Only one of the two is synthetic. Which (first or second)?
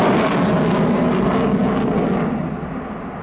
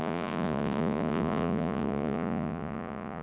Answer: second